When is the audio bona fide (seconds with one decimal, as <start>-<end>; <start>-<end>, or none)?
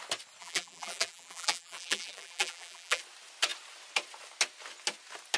0.0-0.4; 3.0-5.4